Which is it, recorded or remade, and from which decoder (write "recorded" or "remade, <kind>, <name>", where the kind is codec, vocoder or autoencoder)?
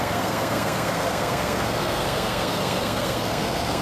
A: remade, codec, SNAC